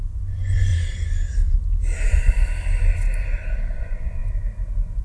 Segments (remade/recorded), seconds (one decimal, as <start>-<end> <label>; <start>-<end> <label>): 0.0-0.7 remade; 0.7-3.7 recorded; 3.7-4.2 remade; 4.2-5.0 recorded